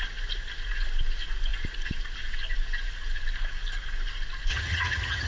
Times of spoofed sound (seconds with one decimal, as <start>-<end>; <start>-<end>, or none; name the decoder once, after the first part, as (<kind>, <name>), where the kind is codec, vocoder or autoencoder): 4.5-5.3 (vocoder, HiFi-GAN)